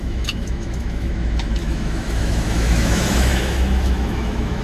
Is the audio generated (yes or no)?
yes